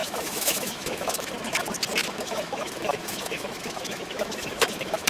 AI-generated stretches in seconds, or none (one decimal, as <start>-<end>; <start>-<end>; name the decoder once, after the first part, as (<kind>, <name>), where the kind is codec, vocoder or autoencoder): 0.0-1.3 (autoencoder, DAC-VAE); 2.0-5.1